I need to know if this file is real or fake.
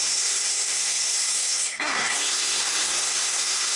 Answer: fake